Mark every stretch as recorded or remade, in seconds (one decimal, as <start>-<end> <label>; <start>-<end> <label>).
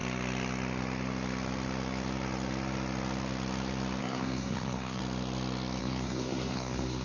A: 0.0-4.0 recorded; 4.0-5.0 remade; 5.0-5.8 recorded; 5.8-7.0 remade